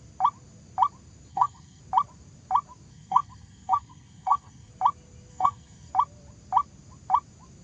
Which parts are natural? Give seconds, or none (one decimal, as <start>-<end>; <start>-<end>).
0.0-1.3; 1.8-2.9; 4.7-5.3; 5.9-7.6